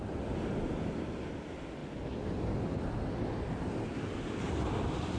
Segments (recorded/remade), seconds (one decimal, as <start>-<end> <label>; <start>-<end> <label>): 0.0-5.2 recorded

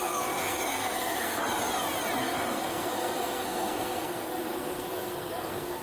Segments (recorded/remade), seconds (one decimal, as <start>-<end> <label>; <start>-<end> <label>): 0.0-1.4 remade; 1.4-2.2 recorded; 2.2-5.8 remade

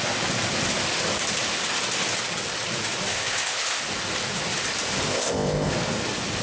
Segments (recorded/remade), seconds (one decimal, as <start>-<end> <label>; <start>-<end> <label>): 0.0-3.1 recorded; 3.1-3.8 remade; 3.8-5.1 recorded; 5.1-5.7 remade; 5.7-6.4 recorded

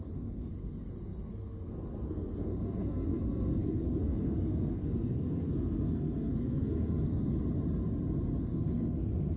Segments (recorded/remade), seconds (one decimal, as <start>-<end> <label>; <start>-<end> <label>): 0.0-7.3 remade; 7.3-8.4 recorded; 8.4-9.4 remade

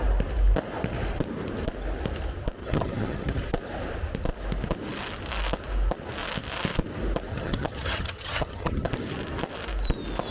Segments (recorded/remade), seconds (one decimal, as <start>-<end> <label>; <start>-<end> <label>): 0.0-2.6 recorded; 2.6-3.4 remade; 3.4-7.3 recorded; 7.3-8.9 remade; 8.9-10.3 recorded